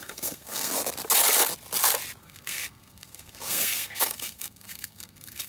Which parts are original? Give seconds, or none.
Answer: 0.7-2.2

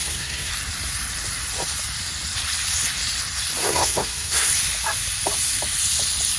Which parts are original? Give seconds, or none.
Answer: 0.5-3.6; 4.5-6.4

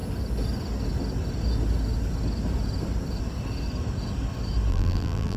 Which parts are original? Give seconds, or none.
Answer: 0.0-4.7

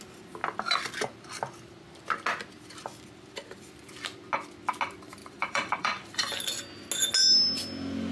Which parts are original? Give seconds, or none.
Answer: 0.0-5.2; 6.4-8.1

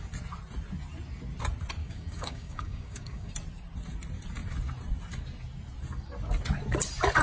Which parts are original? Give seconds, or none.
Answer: 0.0-1.8; 3.3-7.2